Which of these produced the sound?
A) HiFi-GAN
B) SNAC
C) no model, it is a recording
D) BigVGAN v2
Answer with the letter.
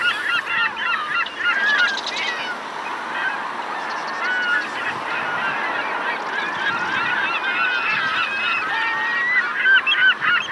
C